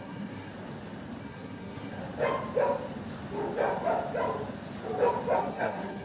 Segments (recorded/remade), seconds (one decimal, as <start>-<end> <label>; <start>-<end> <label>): 0.0-0.5 remade; 0.5-1.2 recorded; 1.2-2.0 remade; 2.0-5.4 recorded; 5.4-6.0 remade